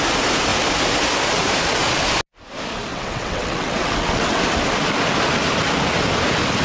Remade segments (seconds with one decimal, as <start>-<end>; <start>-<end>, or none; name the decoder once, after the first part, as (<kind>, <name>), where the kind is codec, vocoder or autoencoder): 2.9-4.4 (vocoder, WaveNeXt)